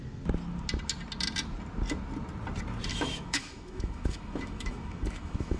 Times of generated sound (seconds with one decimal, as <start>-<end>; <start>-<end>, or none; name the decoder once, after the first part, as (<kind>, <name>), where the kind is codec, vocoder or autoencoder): 2.9-5.6 (autoencoder, DAC-VAE)